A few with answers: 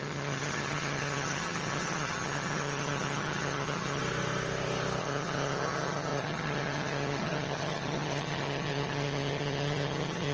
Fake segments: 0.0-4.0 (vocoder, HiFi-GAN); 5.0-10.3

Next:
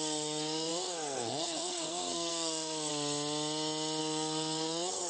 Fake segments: 0.0-2.9 (codec, SNAC); 4.0-5.1

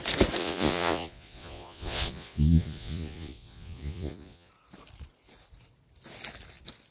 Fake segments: 0.4-4.5 (vocoder, Vocos)